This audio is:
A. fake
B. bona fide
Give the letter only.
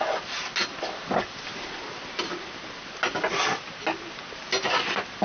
B